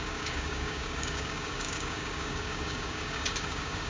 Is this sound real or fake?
fake